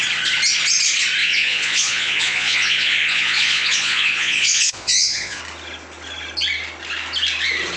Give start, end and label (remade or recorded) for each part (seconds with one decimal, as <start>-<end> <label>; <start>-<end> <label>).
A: 0.0-1.2 recorded; 1.2-5.4 remade; 5.4-7.8 recorded